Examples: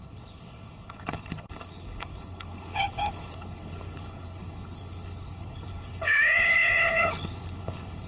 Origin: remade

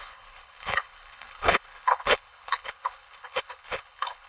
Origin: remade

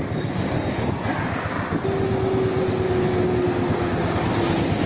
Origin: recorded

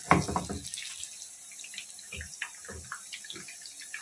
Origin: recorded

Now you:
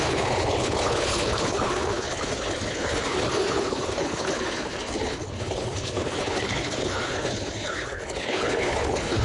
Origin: remade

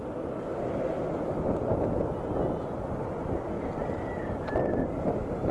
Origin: recorded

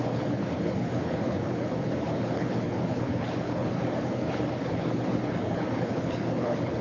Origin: remade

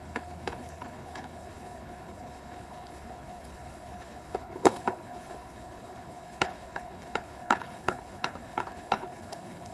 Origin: remade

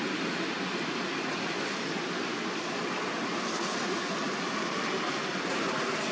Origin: recorded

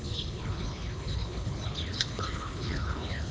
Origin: remade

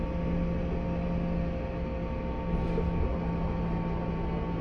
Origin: recorded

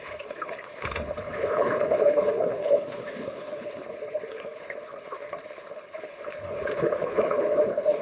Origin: remade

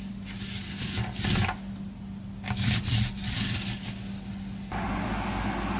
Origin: recorded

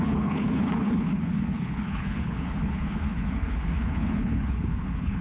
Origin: remade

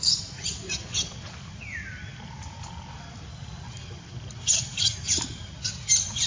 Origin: recorded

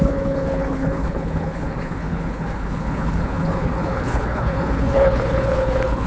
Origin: remade